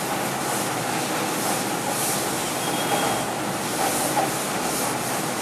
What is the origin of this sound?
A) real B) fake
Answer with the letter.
A